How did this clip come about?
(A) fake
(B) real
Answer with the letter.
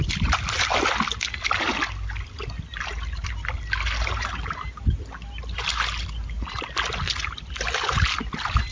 B